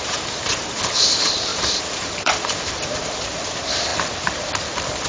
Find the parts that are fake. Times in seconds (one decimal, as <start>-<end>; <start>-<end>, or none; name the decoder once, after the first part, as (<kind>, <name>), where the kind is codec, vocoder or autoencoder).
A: 0.0-3.9 (vocoder, BigVGAN v2)